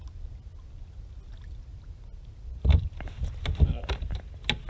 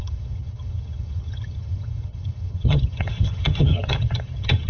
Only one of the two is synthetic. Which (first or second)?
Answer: second